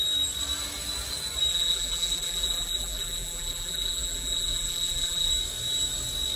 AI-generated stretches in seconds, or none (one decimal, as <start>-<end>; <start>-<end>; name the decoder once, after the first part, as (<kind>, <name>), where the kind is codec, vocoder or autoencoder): 1.5-5.3 (vocoder, BigVGAN v2)